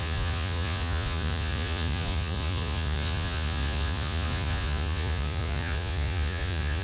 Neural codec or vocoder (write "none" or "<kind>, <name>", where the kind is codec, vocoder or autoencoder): vocoder, Vocos